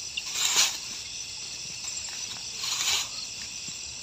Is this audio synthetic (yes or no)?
no